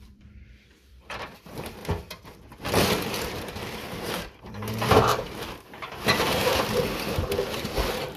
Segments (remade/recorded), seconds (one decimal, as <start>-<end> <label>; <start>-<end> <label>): 0.0-1.8 remade; 1.8-3.3 recorded; 3.3-6.4 remade; 6.4-7.5 recorded; 7.5-8.2 remade